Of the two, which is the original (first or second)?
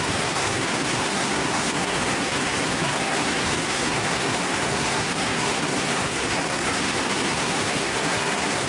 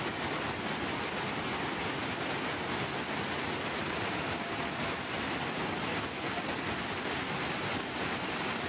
second